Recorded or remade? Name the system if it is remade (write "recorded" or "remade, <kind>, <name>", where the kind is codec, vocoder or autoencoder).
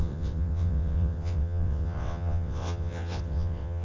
remade, vocoder, WaveNeXt